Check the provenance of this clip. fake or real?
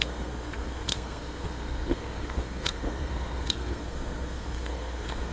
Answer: fake